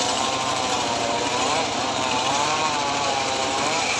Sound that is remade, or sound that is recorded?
remade